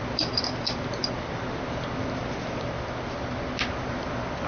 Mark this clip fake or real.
real